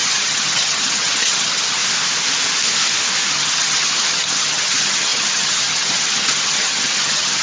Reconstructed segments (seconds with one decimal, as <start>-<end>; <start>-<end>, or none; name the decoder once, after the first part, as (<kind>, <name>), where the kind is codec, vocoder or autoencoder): 0.0-1.8 (vocoder, HiFi-GAN); 3.3-7.4

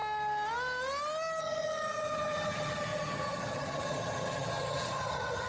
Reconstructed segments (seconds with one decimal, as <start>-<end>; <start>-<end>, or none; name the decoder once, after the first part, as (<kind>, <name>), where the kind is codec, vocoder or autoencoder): 1.4-5.5 (vocoder, HiFi-GAN)

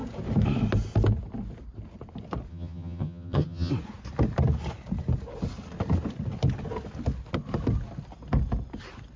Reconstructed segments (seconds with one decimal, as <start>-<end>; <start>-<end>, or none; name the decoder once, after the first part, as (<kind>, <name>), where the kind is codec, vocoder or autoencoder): 2.5-3.7 (vocoder, HiFi-GAN)

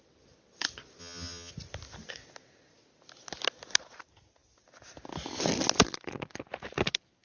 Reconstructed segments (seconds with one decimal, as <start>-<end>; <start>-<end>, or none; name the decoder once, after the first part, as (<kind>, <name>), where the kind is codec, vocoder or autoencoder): 1.0-1.5 (vocoder, HiFi-GAN)

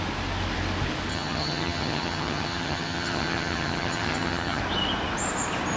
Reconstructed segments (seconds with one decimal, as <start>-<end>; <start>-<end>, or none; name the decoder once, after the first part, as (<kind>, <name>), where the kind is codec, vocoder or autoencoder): 1.1-4.6 (vocoder, HiFi-GAN)

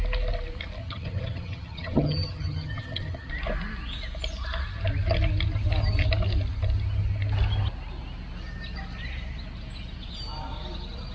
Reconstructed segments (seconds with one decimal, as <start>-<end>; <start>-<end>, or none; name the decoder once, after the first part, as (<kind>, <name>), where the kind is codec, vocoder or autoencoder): 0.8-3.3 (vocoder, HiFi-GAN)

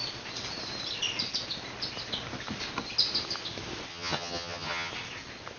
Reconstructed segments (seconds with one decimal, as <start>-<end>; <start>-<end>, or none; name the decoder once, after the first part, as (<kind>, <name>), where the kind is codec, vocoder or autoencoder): 3.9-4.9 (vocoder, HiFi-GAN)

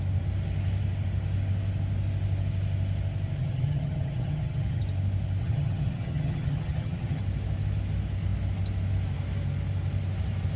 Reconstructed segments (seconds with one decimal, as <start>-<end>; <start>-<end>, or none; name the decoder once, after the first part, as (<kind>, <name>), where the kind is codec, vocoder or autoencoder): 3.4-4.8 (vocoder, HiFi-GAN); 5.4-7.2